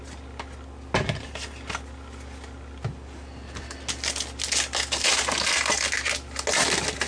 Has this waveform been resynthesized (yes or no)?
no